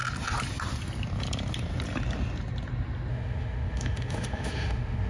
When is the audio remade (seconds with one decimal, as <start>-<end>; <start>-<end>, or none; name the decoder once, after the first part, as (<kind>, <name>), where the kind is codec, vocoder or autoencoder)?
3.1-5.1 (autoencoder, DAC-VAE)